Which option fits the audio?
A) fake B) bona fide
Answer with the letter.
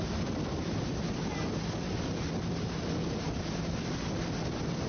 B